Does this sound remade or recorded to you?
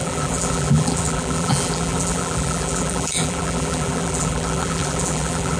remade